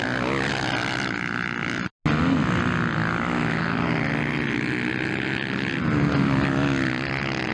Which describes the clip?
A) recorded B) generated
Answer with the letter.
A